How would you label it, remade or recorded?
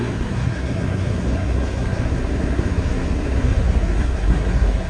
remade